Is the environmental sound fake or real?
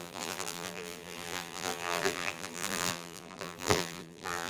fake